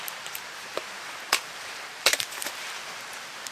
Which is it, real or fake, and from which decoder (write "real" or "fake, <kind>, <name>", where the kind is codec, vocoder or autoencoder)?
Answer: fake, vocoder, BigVGAN v2